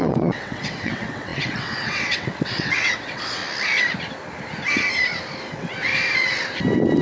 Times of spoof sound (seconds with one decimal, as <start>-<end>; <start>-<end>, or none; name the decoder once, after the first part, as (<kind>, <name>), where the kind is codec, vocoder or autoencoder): 0.0-3.4 (vocoder, WaveNeXt); 5.5-5.9